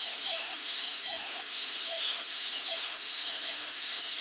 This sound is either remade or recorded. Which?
remade